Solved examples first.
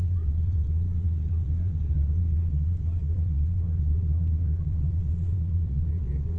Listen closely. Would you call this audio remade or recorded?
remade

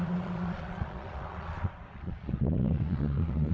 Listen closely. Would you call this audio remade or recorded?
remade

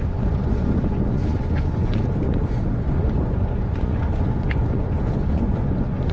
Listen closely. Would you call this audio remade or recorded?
remade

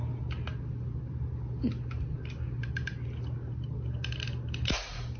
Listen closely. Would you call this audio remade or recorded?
recorded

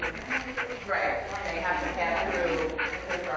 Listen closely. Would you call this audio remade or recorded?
recorded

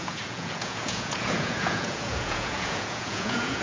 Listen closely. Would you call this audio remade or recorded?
remade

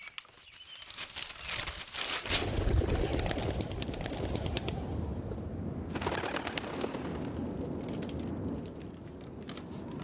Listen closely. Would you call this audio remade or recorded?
recorded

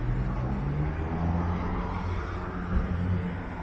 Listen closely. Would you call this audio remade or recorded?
recorded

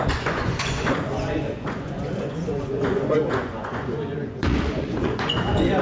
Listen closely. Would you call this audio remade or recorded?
remade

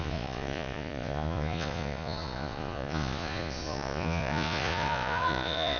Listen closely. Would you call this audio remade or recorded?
remade